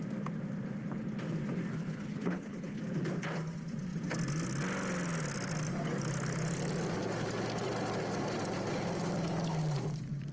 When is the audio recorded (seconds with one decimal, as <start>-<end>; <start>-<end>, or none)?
0.0-1.7; 2.8-10.3